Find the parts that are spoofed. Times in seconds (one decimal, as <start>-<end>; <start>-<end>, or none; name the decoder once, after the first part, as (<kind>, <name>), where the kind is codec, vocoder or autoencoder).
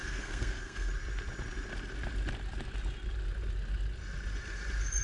0.0-0.9 (codec, SNAC)